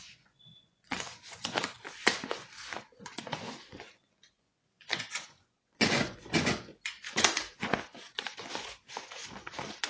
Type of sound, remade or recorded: remade